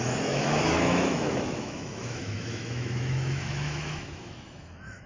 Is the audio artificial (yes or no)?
yes